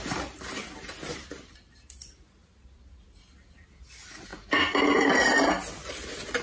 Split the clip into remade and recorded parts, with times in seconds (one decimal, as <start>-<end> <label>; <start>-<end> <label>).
0.0-6.4 recorded